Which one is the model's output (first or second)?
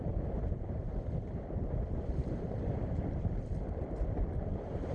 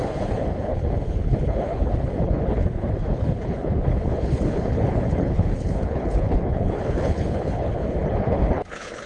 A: second